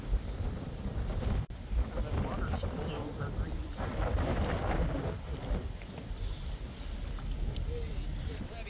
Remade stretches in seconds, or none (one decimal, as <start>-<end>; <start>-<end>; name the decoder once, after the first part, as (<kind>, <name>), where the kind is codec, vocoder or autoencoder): 0.0-8.7 (vocoder, BigVGAN v2)